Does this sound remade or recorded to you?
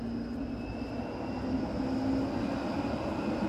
recorded